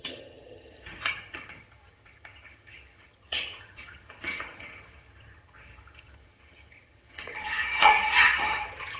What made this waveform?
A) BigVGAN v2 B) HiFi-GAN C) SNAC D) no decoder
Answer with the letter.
B